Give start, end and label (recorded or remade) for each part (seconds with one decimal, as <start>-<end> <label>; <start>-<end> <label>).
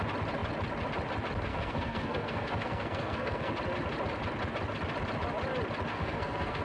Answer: 0.0-1.5 recorded; 1.5-3.5 remade; 3.5-5.9 recorded; 5.9-6.6 remade